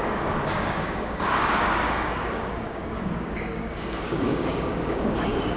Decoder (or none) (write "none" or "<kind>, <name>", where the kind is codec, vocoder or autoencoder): codec, DAC